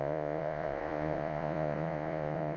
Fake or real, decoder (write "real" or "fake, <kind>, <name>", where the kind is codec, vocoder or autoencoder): fake, vocoder, Vocos